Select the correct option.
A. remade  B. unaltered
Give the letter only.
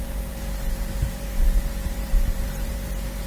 A